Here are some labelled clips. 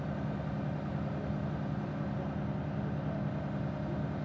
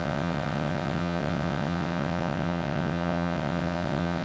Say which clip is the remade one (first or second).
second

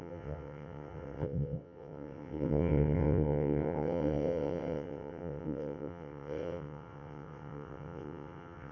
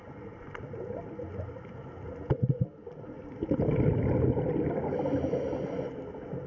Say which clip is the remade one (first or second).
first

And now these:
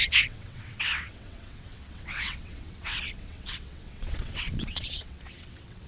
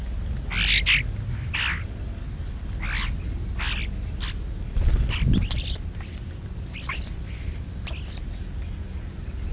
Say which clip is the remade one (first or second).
first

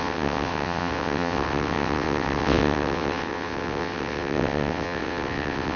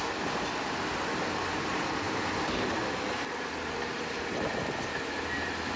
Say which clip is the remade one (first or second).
first